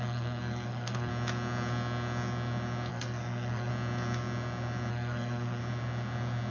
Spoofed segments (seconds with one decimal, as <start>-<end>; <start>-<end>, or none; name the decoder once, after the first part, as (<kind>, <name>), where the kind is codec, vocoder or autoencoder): 0.0-1.1 (codec, SNAC); 2.9-3.7; 4.9-5.6